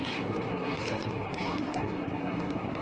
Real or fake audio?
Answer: fake